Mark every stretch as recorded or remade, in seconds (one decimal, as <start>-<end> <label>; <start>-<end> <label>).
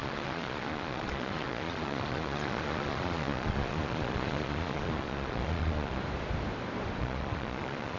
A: 0.0-6.0 remade; 6.0-7.0 recorded; 7.0-8.0 remade